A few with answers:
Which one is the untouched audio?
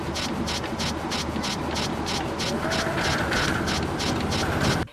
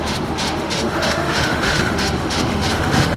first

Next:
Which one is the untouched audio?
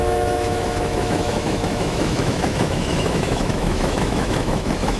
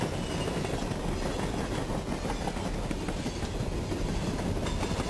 second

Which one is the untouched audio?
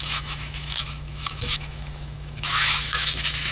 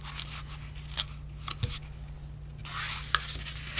second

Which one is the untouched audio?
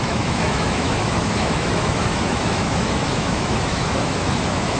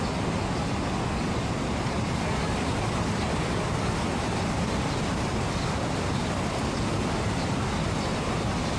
second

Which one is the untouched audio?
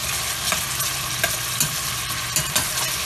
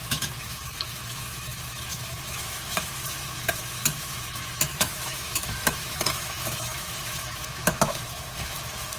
first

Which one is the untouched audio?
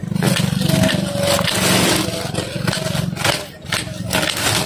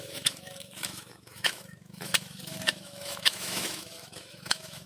first